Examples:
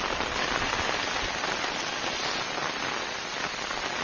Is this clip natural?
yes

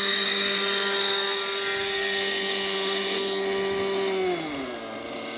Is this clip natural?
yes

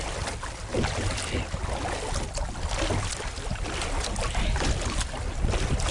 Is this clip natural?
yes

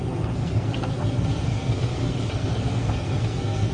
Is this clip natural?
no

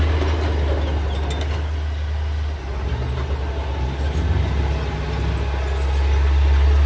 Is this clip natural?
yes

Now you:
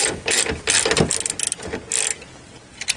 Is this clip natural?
yes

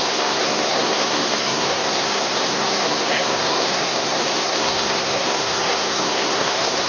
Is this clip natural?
no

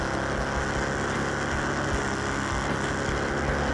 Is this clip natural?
yes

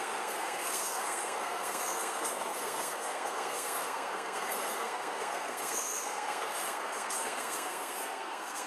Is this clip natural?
no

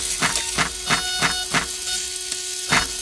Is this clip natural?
yes